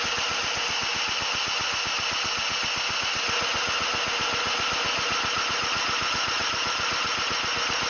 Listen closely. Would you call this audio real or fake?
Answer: real